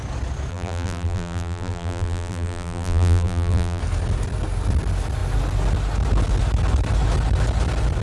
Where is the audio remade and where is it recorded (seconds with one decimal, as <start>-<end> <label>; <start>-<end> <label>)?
0.0-0.5 recorded; 0.5-3.8 remade; 3.8-8.0 recorded